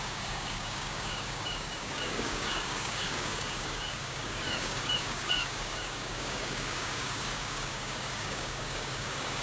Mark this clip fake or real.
fake